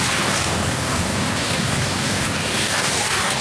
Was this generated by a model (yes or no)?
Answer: yes